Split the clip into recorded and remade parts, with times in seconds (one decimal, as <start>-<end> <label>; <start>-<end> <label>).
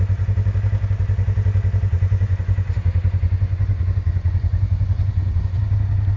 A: 0.0-1.9 recorded; 1.9-5.6 remade; 5.6-6.2 recorded